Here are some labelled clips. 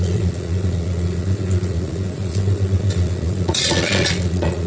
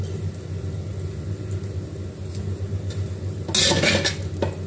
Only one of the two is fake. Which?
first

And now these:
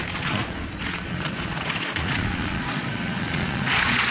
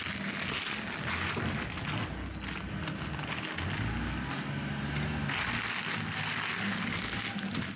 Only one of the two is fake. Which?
first